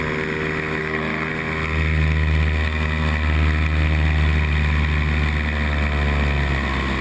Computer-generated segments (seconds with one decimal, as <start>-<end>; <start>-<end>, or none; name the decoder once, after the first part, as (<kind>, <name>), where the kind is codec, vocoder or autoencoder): 0.8-1.3 (codec, SNAC)